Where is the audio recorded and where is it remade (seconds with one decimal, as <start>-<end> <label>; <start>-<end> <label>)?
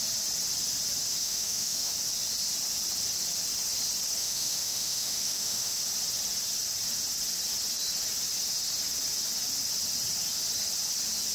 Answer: 0.0-1.2 recorded; 1.2-1.9 remade; 1.9-4.2 recorded; 4.2-5.8 remade; 5.8-11.3 recorded